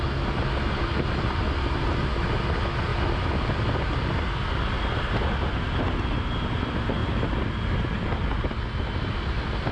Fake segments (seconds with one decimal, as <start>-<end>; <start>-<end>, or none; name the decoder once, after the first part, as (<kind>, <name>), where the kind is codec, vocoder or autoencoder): none